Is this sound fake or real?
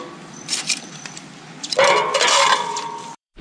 fake